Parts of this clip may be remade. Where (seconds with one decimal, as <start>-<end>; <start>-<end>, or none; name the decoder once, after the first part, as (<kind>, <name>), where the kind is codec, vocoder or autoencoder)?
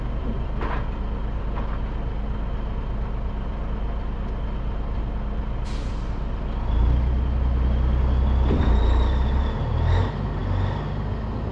none